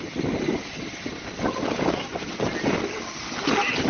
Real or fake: real